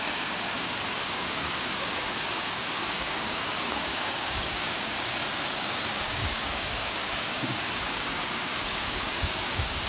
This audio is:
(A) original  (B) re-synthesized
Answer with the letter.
B